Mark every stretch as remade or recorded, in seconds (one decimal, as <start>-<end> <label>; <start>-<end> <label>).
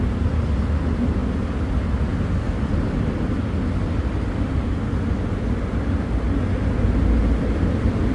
0.0-8.1 recorded